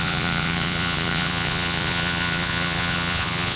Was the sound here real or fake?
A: fake